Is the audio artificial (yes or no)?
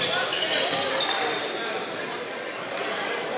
yes